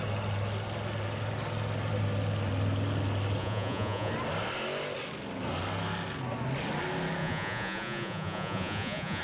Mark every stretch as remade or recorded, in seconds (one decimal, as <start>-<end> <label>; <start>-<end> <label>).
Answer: 0.0-3.4 recorded; 3.4-4.1 remade; 4.1-7.2 recorded; 7.2-9.2 remade